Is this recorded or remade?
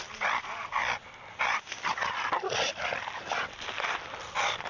recorded